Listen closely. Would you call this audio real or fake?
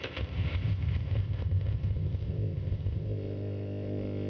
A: fake